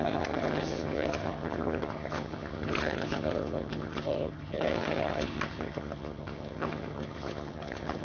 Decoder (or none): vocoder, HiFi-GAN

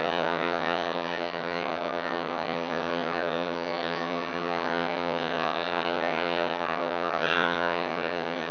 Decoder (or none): vocoder, HiFi-GAN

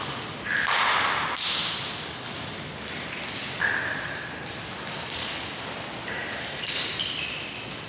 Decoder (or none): none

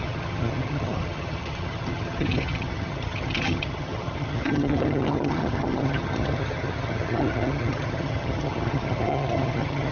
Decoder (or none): vocoder, HiFi-GAN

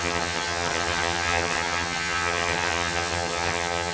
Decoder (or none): vocoder, HiFi-GAN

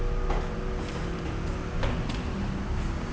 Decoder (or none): none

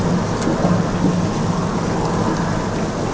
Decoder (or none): none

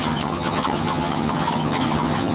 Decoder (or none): vocoder, HiFi-GAN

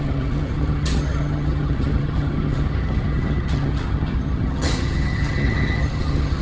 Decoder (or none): vocoder, HiFi-GAN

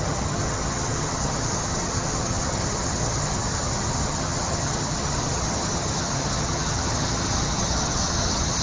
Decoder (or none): vocoder, HiFi-GAN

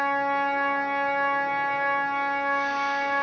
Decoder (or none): none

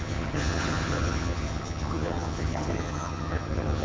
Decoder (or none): vocoder, HiFi-GAN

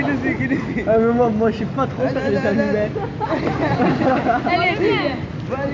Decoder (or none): none